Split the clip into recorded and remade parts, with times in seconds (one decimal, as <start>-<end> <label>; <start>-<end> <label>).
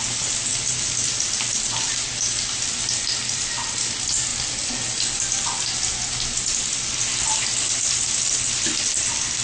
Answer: 0.0-9.4 recorded